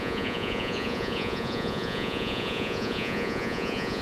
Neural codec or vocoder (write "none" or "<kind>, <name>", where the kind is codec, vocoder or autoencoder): vocoder, Vocos